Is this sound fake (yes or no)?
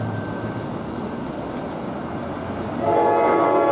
no